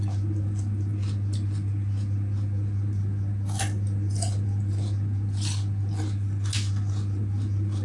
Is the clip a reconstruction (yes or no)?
no